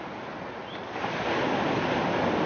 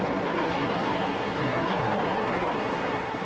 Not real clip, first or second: second